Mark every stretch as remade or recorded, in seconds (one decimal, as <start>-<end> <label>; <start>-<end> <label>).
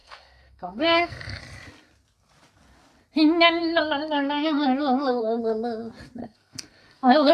0.0-1.4 remade; 1.4-3.6 recorded; 3.6-5.4 remade; 5.4-6.2 recorded; 6.2-7.3 remade